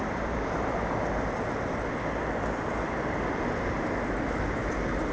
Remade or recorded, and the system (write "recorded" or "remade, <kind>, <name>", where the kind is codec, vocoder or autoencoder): recorded